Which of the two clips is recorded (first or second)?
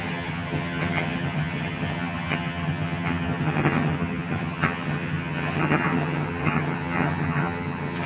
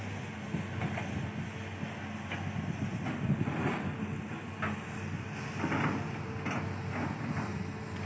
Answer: second